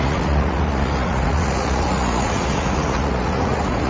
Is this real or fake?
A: fake